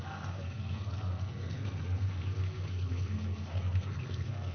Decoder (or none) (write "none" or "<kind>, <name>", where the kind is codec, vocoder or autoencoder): codec, SNAC